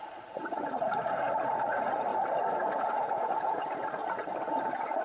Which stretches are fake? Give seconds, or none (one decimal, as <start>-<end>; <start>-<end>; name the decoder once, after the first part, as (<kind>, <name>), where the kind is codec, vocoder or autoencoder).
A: 0.0-2.1 (vocoder, Vocos); 2.8-4.0